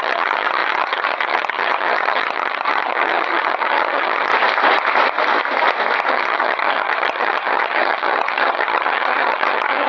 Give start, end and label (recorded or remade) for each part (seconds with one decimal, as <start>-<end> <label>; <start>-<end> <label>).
0.0-4.3 remade; 4.3-6.1 recorded; 6.1-9.9 remade